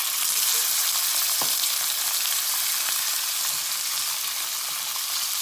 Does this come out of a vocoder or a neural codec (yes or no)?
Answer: no